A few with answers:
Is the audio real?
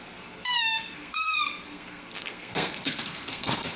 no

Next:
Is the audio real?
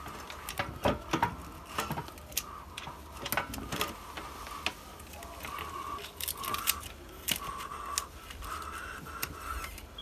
yes